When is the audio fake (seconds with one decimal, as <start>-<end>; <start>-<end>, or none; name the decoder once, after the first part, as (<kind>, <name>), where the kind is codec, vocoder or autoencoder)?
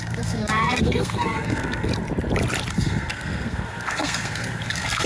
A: 0.0-1.9 (codec, SNAC); 2.7-5.1